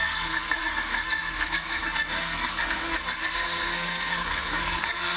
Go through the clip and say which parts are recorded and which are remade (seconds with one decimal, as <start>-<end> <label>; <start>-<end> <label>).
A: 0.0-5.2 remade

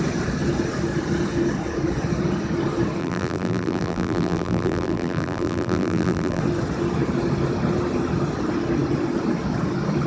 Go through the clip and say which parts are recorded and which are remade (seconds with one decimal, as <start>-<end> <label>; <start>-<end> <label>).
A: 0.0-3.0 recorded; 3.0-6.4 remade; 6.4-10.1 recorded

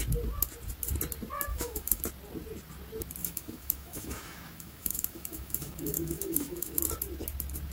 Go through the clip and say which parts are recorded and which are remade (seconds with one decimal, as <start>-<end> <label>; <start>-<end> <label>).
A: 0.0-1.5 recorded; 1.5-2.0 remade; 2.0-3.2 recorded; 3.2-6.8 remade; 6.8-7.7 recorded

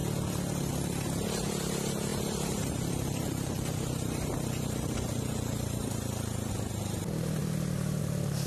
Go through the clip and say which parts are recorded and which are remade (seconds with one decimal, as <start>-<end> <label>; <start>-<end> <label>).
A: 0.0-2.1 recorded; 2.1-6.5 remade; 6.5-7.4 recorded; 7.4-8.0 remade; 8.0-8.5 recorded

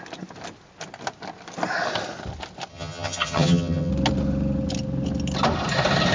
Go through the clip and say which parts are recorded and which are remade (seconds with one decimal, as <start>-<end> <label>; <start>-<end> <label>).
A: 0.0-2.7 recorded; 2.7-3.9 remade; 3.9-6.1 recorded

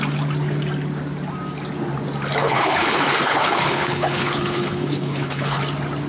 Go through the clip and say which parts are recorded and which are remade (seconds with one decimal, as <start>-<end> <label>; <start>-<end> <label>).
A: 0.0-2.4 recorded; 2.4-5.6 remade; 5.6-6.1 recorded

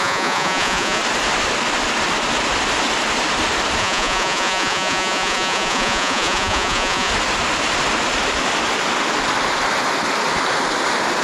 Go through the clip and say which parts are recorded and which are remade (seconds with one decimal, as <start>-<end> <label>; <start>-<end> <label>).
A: 0.0-1.0 remade; 1.0-3.8 recorded; 3.8-7.1 remade; 7.1-11.2 recorded

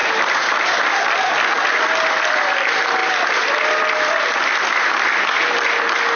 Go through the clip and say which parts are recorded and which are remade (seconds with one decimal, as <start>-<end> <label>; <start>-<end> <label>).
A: 0.0-6.2 recorded